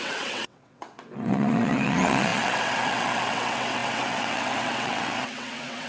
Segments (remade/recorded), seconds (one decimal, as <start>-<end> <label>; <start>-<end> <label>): 0.0-5.9 remade